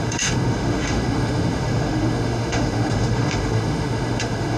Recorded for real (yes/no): no